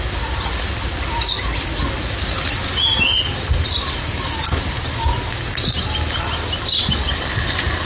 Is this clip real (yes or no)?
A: yes